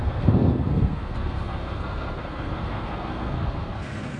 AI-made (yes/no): yes